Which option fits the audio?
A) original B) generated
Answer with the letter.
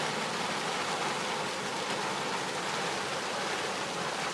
A